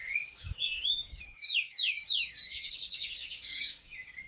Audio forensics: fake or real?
fake